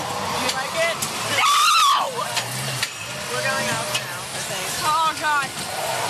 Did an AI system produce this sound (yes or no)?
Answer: no